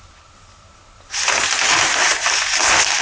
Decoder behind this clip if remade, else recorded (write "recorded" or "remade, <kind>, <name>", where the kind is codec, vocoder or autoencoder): recorded